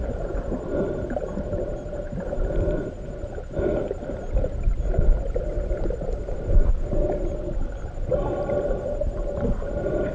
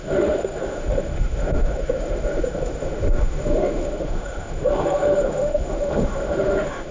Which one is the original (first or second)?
first